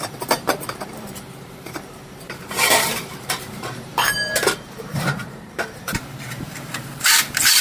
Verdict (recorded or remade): remade